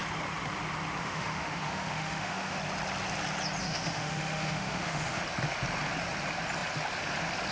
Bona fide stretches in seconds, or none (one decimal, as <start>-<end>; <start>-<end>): 0.0-1.0; 2.6-3.6; 5.2-7.5